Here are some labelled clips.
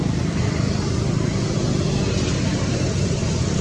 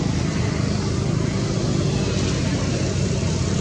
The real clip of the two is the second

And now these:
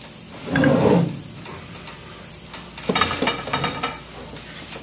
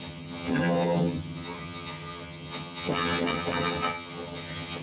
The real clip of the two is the first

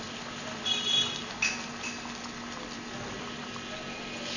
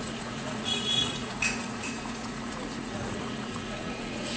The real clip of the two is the first